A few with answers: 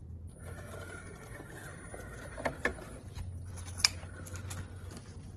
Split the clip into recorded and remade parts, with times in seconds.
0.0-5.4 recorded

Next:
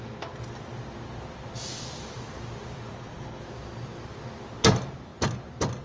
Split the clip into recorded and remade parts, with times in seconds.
0.0-2.9 recorded; 2.9-3.4 remade; 3.4-5.8 recorded

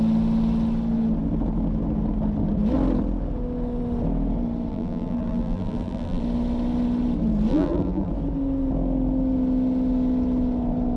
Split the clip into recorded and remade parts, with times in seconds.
0.0-4.7 recorded; 4.7-6.2 remade; 6.2-7.5 recorded; 7.5-8.1 remade; 8.1-11.0 recorded

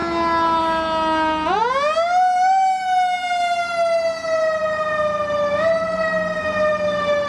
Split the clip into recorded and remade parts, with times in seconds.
0.0-7.3 recorded

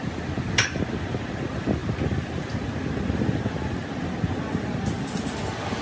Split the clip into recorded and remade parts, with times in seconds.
0.0-5.8 recorded